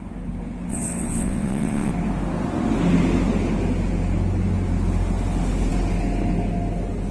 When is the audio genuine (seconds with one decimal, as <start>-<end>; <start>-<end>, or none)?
0.0-0.7; 1.9-7.1